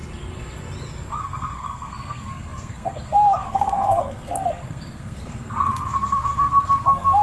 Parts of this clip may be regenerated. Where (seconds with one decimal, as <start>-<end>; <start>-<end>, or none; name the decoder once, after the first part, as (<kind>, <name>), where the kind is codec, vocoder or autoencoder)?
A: 1.2-7.2 (codec, SNAC)